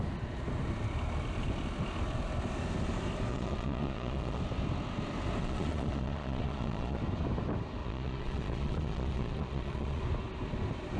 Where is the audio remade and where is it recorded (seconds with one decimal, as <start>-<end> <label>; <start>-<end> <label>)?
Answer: 0.0-3.3 recorded; 3.3-4.4 remade; 4.4-5.4 recorded; 5.4-7.0 remade; 7.0-7.8 recorded; 7.8-10.0 remade; 10.0-11.0 recorded